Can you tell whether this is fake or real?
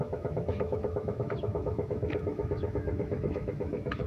fake